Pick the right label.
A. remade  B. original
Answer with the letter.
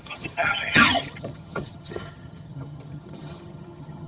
A